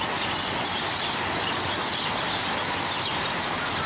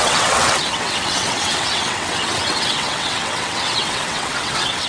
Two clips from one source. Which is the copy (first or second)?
second